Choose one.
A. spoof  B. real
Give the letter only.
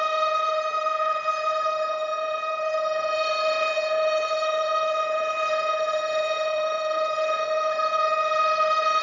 A